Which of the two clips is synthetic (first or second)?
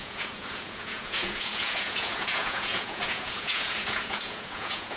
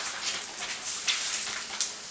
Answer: first